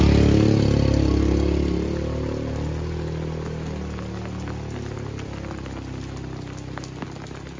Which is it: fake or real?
real